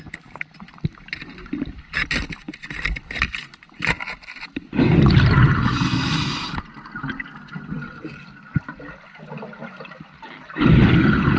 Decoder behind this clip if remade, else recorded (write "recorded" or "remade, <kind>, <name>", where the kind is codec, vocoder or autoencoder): recorded